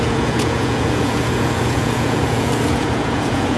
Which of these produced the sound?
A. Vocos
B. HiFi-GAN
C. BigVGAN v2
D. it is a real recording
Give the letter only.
A